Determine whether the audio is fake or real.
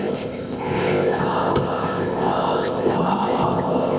fake